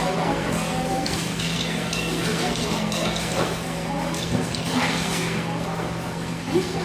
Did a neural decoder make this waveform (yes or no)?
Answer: yes